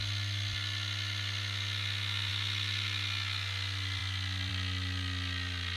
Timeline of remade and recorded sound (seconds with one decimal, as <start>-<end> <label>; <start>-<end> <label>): 0.0-5.8 recorded

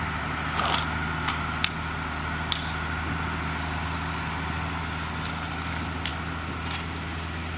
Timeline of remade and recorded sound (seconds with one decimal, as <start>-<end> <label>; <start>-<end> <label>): 0.0-7.6 recorded

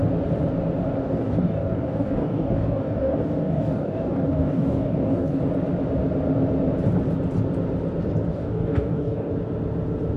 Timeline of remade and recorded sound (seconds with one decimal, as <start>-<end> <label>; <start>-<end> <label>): 0.0-1.0 recorded; 1.0-5.4 remade; 5.4-8.3 recorded; 8.3-9.3 remade; 9.3-10.2 recorded

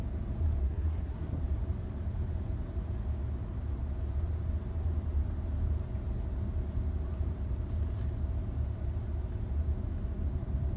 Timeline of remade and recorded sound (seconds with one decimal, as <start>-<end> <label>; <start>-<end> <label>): 0.0-0.6 recorded; 0.6-1.4 remade; 1.4-10.8 recorded

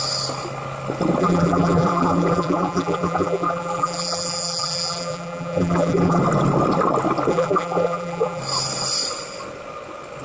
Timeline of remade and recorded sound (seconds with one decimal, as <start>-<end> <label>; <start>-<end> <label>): 0.0-1.2 recorded; 1.2-6.2 remade; 6.2-7.3 recorded; 7.3-8.4 remade; 8.4-10.2 recorded

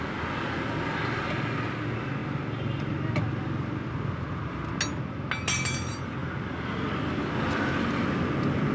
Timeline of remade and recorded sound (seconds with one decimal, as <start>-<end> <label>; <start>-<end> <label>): 0.0-8.7 recorded

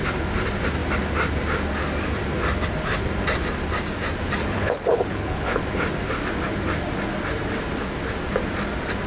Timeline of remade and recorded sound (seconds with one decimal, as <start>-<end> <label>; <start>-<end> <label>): 0.0-4.4 recorded; 4.4-5.6 remade; 5.6-9.1 recorded